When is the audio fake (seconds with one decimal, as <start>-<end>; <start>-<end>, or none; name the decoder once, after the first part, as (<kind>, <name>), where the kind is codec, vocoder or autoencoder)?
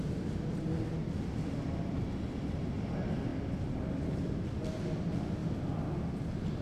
1.0-2.9 (vocoder, BigVGAN v2); 3.3-4.1